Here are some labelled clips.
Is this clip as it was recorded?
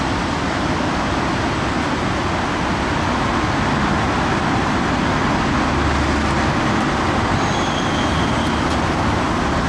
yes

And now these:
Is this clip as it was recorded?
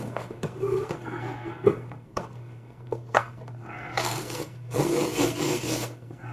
no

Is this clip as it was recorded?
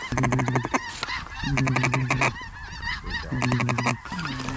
yes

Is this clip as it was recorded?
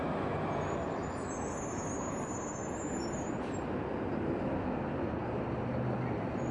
yes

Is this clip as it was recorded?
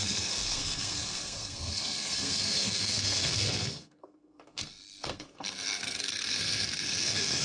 no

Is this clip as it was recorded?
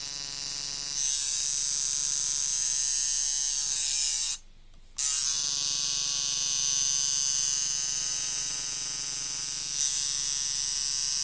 yes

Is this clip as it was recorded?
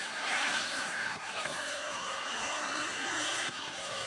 no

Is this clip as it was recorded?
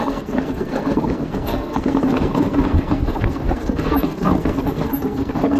no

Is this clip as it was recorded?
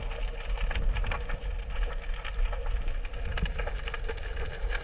yes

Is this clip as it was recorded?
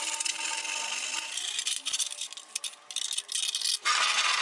yes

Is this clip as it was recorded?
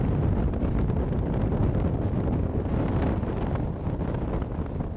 yes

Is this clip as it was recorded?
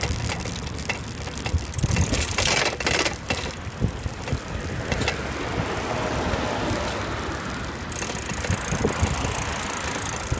yes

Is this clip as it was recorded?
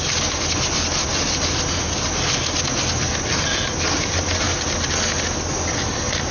yes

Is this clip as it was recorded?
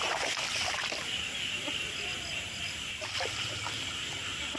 yes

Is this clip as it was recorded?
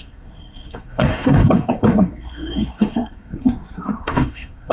no